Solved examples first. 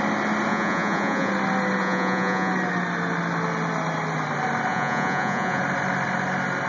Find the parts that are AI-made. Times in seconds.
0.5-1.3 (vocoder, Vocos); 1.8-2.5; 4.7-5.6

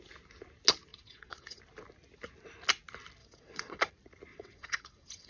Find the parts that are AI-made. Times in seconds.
0.9-1.6 (vocoder, WaveNeXt); 3.2-3.9; 4.3-5.3

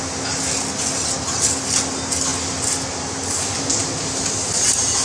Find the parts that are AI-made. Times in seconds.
none

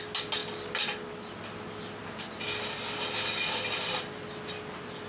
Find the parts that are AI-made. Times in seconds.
none

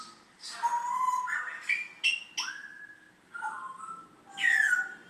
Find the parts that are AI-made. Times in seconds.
none

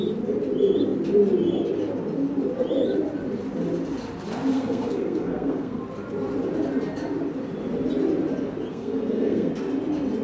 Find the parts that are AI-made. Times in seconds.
4.5-5.8 (codec, SNAC); 8.7-9.5

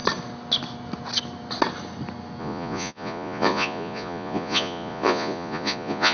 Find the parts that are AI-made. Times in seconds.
2.4-6.1 (vocoder, Vocos)